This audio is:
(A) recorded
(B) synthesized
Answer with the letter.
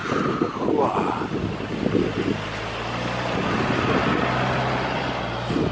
A